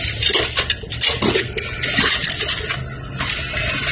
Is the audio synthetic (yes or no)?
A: no